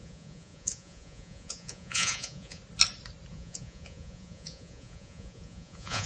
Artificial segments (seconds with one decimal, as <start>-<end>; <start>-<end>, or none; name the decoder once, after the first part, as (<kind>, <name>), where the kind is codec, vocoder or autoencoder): 0.0-2.6 (vocoder, Vocos); 3.3-6.1